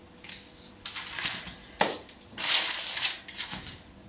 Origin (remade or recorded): recorded